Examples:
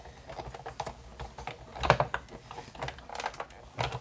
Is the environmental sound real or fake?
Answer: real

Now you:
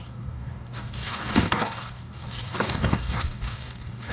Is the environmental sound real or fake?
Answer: fake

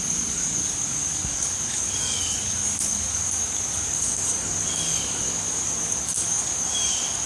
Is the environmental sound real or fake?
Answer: fake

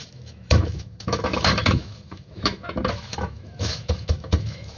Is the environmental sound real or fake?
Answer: fake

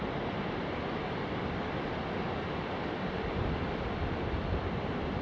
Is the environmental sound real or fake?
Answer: real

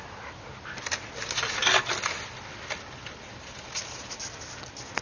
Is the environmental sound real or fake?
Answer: real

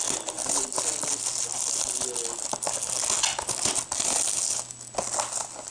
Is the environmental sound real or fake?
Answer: real